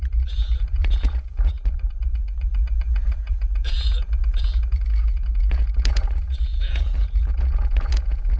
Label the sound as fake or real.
fake